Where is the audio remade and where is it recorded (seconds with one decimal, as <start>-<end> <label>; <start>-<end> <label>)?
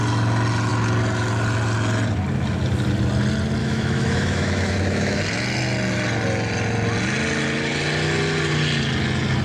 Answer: 0.0-3.6 recorded; 3.6-5.2 remade; 5.2-9.4 recorded